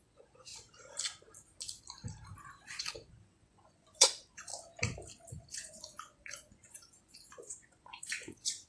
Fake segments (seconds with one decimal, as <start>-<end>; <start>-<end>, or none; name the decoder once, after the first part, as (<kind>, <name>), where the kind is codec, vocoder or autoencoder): 0.0-0.5 (vocoder, Vocos); 3.1-4.5; 5.3-8.7